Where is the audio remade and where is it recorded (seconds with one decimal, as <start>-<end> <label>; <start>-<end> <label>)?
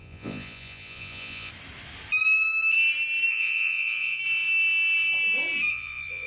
0.0-1.5 remade; 1.5-3.3 recorded; 3.3-4.2 remade; 4.2-5.7 recorded; 5.7-6.3 remade